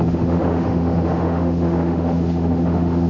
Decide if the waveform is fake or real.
fake